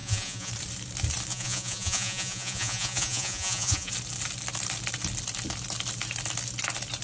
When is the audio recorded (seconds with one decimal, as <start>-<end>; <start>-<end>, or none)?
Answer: 0.5-1.3; 3.9-7.0